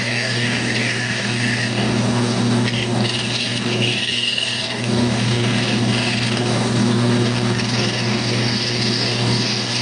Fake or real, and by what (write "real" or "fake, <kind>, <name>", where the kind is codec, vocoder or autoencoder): fake, codec, DAC